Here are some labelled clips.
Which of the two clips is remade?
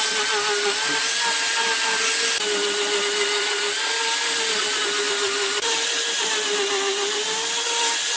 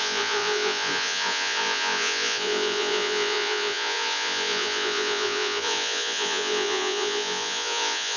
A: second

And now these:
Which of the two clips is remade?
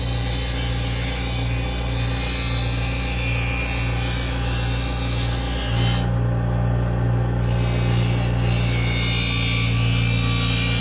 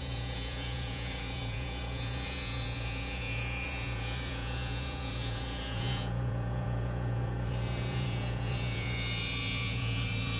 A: second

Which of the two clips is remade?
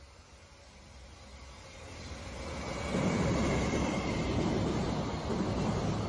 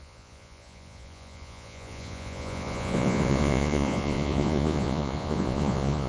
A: second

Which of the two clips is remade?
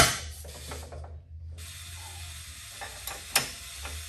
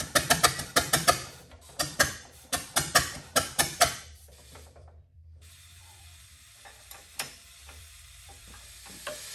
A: second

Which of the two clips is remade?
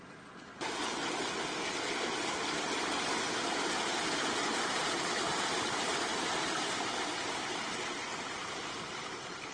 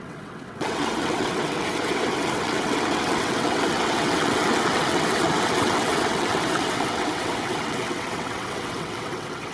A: second